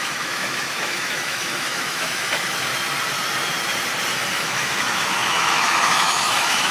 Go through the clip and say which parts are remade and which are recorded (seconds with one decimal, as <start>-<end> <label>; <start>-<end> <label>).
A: 0.0-2.7 remade; 2.7-4.3 recorded; 4.3-6.7 remade